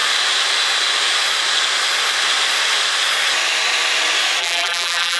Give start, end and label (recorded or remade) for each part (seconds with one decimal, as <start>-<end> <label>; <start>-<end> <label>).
0.0-4.4 recorded; 4.4-5.2 remade